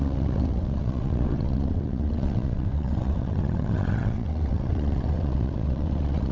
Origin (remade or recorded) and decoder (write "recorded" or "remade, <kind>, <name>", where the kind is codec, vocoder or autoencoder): remade, vocoder, WaveNeXt